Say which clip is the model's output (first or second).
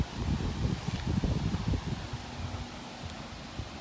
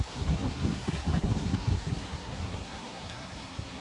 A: second